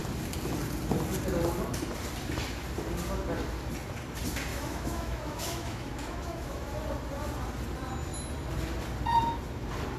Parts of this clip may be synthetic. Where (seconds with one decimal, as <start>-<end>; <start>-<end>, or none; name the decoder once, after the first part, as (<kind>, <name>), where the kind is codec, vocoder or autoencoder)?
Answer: 4.5-6.7 (autoencoder, DAC-VAE)